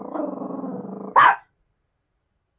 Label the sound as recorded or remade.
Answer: recorded